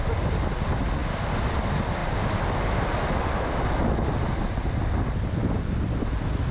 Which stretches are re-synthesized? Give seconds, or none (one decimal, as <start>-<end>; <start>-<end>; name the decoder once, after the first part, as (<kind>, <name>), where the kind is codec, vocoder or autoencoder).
none